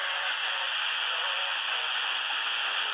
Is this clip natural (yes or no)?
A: no